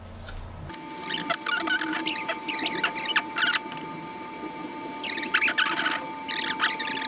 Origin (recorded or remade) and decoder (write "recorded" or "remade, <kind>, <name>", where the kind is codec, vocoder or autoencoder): recorded